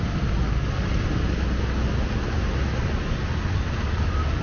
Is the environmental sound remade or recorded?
recorded